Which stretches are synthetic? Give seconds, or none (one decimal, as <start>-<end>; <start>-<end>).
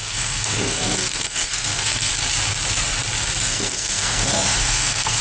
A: 0.0-2.1; 3.4-5.2